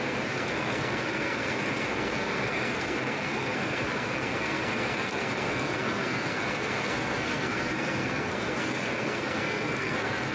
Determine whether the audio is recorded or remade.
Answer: remade